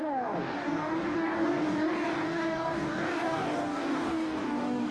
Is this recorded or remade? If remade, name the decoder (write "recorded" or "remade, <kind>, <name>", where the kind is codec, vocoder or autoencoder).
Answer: remade, codec, DAC